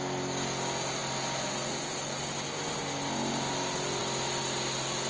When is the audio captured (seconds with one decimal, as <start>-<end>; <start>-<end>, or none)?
0.0-5.1